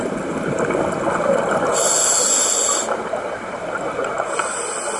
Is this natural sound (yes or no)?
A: yes